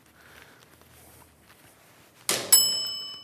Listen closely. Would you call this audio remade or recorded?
recorded